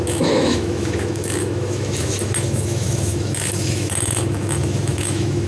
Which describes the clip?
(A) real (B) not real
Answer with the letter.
B